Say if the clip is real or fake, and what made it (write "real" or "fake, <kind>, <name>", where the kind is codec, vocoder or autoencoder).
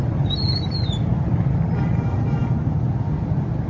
real